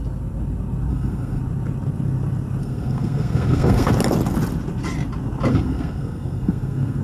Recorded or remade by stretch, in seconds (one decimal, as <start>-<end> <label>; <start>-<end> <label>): 0.0-0.9 recorded; 0.9-1.4 remade; 1.4-2.6 recorded; 2.6-3.9 remade; 3.9-5.5 recorded; 5.5-7.0 remade